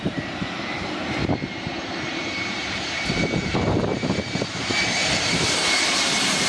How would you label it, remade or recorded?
remade